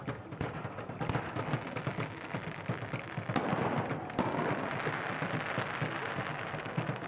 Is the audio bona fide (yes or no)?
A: yes